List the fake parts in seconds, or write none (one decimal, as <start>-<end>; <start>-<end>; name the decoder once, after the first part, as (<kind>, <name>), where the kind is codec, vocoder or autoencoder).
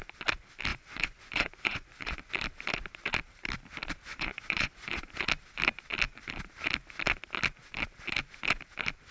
0.7-2.3 (vocoder, Vocos); 4.1-5.2